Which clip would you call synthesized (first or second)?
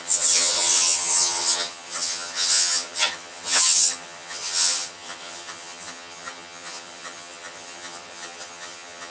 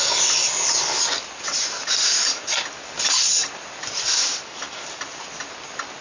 first